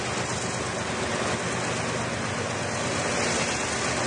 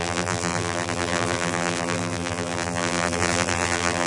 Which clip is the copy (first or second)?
second